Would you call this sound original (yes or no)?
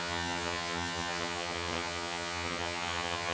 no